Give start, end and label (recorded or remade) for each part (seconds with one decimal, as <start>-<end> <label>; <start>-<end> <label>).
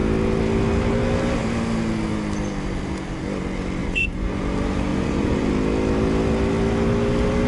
0.0-3.8 recorded; 3.8-4.4 remade; 4.4-4.9 recorded; 4.9-5.5 remade; 5.5-7.5 recorded